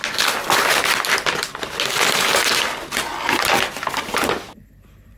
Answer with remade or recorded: recorded